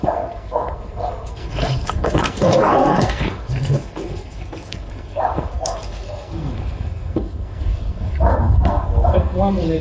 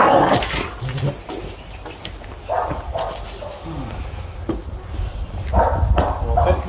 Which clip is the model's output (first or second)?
first